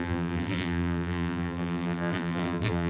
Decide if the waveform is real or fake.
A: fake